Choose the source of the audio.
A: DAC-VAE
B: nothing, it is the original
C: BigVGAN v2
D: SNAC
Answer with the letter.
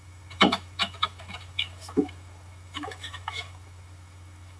A